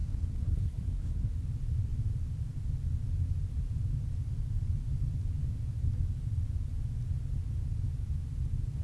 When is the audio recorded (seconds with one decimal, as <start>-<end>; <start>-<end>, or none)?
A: 1.3-8.8